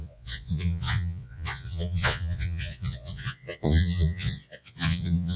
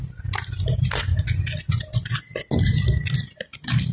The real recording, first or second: second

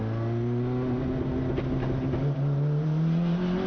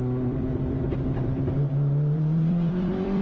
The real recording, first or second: first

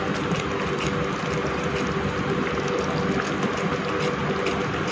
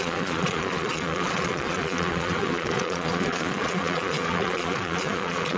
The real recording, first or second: first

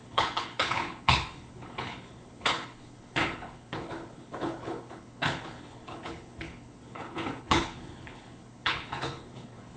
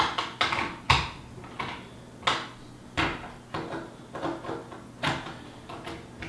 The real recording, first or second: second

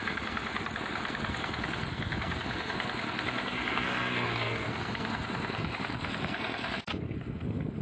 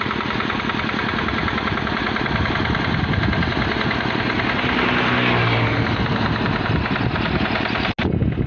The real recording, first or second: second